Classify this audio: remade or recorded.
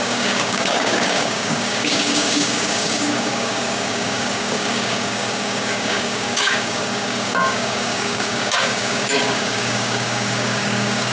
remade